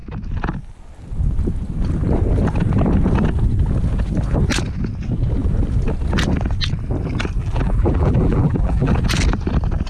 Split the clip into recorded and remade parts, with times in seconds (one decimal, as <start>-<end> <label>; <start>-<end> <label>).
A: 0.0-7.4 recorded; 7.4-8.9 remade; 8.9-9.9 recorded